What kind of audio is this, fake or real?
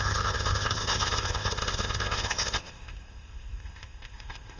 fake